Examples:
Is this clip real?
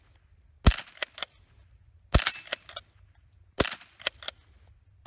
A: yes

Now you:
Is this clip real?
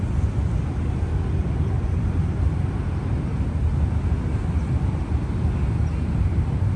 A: yes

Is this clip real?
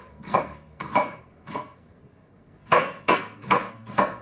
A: no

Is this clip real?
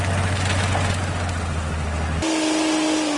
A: yes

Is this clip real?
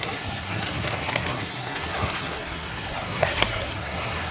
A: no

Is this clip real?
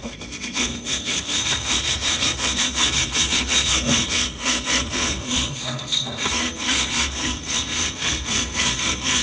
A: no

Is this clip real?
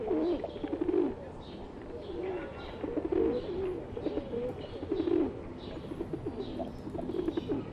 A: yes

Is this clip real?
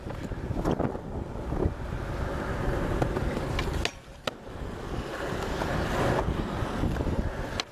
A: yes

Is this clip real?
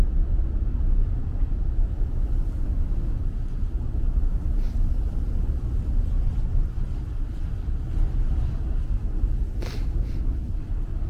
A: yes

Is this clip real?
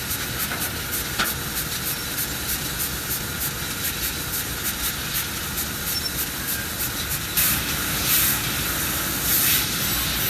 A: yes